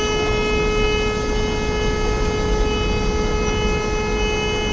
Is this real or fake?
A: real